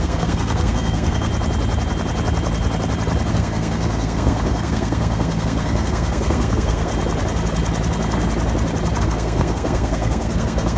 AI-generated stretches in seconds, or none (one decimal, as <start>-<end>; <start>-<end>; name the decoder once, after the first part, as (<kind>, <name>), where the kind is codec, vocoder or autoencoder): 0.0-1.3 (codec, SNAC); 3.3-6.9; 9.0-10.8